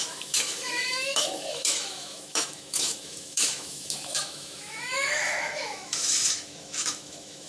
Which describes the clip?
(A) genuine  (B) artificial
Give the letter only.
B